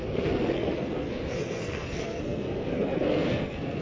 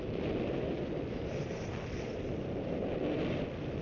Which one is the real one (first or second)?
second